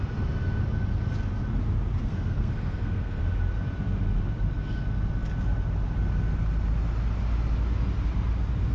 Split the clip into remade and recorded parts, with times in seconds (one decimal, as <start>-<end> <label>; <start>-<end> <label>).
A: 0.0-2.0 recorded; 2.0-3.2 remade; 3.2-8.7 recorded